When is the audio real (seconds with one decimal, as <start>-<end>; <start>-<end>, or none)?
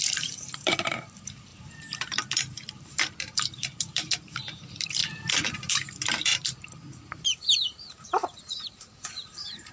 5.0-5.7